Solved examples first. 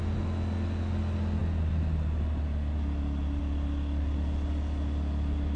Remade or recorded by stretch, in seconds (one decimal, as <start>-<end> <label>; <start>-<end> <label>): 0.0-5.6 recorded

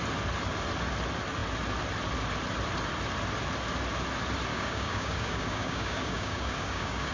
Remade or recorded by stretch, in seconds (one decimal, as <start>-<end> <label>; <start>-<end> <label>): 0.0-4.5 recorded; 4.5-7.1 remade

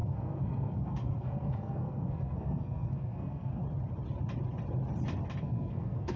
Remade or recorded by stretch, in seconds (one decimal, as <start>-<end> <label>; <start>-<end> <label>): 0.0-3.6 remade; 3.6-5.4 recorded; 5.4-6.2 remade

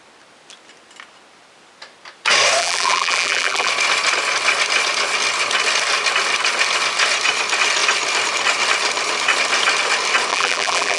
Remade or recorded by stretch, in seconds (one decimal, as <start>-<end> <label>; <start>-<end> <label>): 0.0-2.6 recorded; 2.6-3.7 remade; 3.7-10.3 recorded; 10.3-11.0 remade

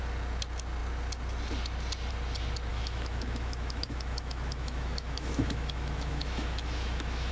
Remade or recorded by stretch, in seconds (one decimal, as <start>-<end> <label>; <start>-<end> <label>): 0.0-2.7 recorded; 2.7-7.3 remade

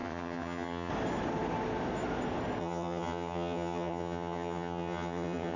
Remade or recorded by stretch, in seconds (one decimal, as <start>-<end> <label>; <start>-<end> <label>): 0.0-0.9 remade; 0.9-2.6 recorded; 2.6-5.6 remade